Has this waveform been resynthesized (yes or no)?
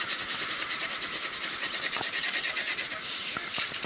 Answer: no